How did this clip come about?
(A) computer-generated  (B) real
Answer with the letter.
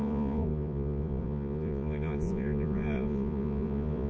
A